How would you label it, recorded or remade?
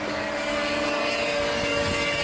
remade